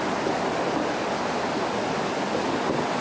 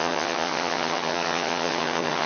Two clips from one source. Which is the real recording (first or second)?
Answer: first